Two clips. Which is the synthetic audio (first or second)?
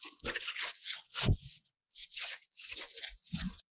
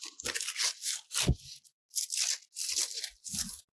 first